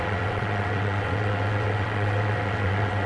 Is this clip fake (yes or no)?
yes